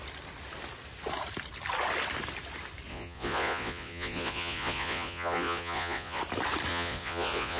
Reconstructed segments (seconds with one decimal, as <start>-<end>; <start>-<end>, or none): 2.9-6.2; 6.7-7.6